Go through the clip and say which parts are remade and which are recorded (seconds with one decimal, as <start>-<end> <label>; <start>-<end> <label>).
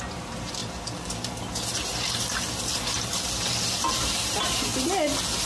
0.0-0.6 remade; 0.6-3.9 recorded; 3.9-4.7 remade; 4.7-5.5 recorded